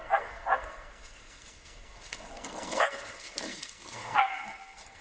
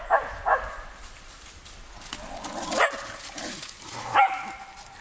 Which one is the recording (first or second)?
second